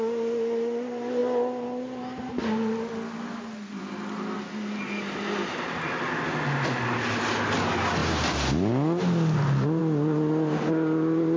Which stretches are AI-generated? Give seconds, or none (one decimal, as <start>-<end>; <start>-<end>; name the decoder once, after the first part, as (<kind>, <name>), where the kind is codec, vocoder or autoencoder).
none